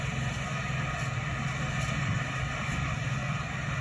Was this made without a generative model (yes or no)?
yes